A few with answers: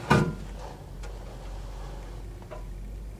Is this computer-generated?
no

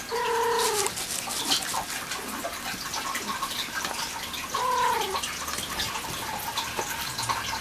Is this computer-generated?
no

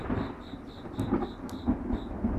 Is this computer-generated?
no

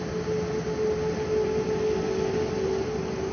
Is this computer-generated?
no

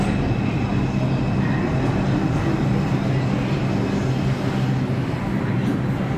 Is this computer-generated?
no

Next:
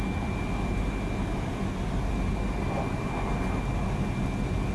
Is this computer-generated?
no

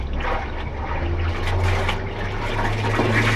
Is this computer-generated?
no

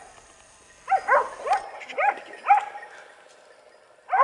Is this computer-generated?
no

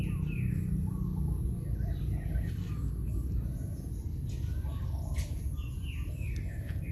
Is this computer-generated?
no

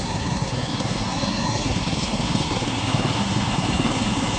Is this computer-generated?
yes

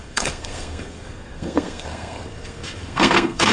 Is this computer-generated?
yes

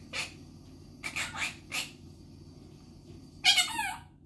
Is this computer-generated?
no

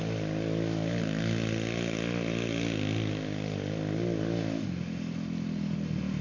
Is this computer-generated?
no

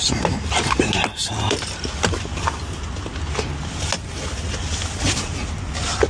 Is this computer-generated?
no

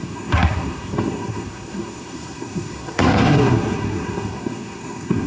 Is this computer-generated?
yes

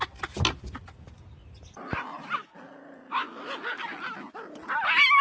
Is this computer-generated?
no